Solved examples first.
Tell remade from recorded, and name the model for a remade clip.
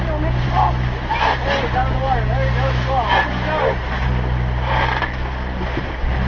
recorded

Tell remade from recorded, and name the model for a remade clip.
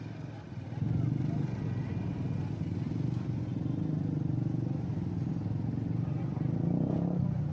recorded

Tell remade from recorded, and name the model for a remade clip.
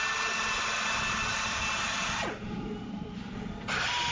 recorded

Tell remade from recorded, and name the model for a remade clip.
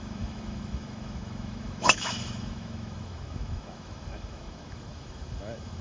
remade, autoencoder, DAC-VAE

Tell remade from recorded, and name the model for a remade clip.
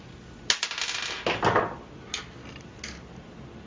recorded